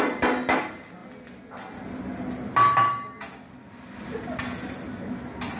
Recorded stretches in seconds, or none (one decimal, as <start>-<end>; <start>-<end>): 0.0-5.6